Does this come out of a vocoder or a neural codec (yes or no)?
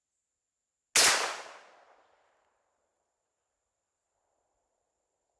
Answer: no